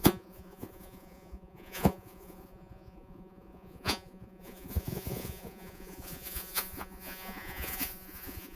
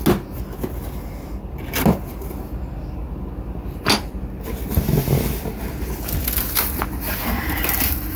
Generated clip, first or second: first